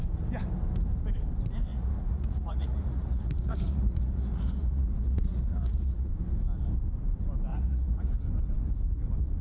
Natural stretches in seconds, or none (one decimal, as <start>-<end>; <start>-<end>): 0.0-1.7; 6.1-7.5; 8.1-9.4